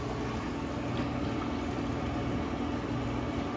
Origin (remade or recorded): recorded